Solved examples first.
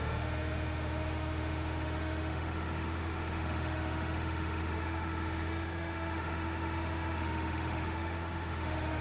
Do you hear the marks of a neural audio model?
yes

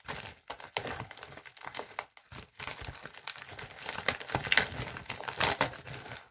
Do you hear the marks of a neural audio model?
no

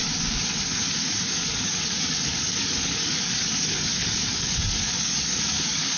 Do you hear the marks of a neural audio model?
yes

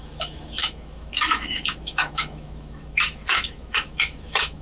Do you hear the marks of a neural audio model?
yes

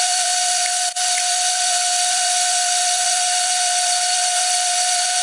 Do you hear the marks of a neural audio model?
yes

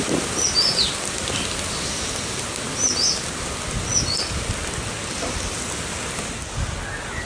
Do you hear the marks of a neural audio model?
no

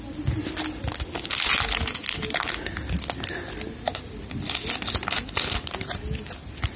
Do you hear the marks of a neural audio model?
no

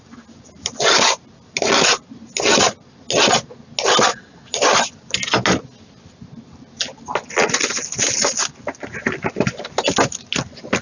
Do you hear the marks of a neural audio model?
no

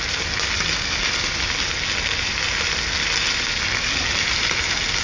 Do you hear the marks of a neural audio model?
no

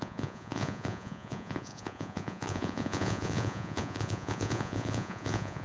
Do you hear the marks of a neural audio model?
yes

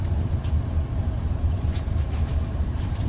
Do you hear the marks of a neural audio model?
yes